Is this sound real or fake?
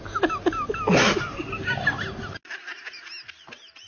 real